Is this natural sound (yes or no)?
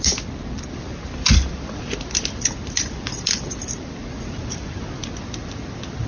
no